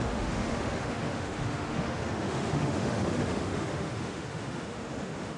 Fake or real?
fake